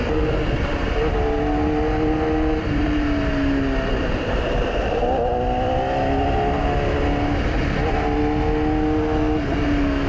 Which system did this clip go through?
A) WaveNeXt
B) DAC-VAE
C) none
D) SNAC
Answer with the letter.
C